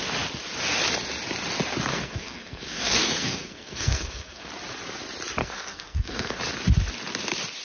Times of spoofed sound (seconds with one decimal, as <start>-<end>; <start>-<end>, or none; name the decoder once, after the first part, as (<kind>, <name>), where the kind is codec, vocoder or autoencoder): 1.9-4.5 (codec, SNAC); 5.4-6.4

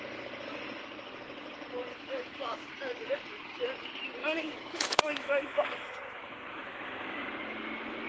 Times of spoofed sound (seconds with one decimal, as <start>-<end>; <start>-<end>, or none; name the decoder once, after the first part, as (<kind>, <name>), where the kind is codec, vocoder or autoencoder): 1.9-2.6 (autoencoder, DAC-VAE); 4.2-7.3

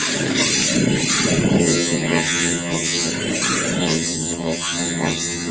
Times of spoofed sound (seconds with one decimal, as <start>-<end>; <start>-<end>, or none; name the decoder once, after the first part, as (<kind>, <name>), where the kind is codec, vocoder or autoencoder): 1.6-3.1 (vocoder, HiFi-GAN); 3.8-5.5

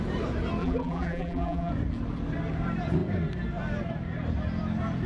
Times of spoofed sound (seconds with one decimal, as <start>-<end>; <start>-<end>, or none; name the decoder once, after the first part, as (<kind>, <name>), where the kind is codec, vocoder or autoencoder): 0.6-1.7 (vocoder, BigVGAN v2)

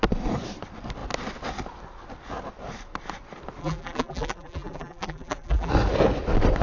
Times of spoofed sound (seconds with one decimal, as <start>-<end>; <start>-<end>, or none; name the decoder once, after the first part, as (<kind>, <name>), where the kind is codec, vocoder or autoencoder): 3.6-5.7 (vocoder, BigVGAN v2)

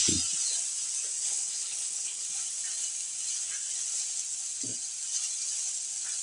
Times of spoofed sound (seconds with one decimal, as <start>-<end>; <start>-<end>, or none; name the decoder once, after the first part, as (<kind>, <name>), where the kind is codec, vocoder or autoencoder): 1.2-2.3 (codec, HILCodec)

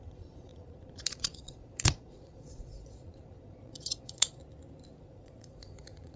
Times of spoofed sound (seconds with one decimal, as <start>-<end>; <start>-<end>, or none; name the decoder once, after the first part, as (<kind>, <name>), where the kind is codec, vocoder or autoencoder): 0.0-4.4 (vocoder, Vocos); 5.0-6.2

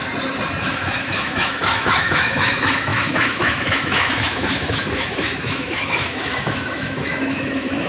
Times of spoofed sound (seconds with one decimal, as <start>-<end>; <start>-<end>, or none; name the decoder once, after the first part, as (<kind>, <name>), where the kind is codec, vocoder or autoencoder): 0.6-7.9 (autoencoder, DAC-VAE)